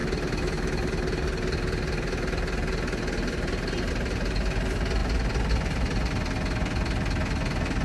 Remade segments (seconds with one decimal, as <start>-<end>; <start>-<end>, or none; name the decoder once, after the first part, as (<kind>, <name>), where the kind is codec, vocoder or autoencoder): none